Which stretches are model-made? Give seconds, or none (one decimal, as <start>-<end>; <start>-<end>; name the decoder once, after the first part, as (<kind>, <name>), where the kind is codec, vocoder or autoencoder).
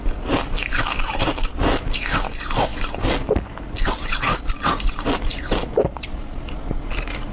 none